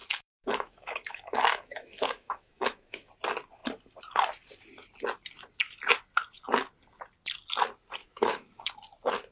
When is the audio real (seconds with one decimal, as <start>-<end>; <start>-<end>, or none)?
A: 3.1-8.0; 8.7-9.3